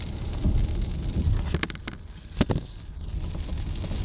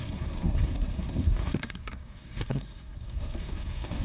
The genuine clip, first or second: first